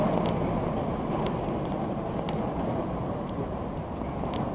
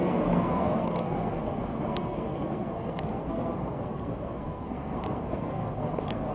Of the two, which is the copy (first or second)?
second